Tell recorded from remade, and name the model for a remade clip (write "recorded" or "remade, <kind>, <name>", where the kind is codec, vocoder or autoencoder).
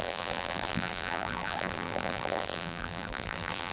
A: remade, vocoder, BigVGAN v2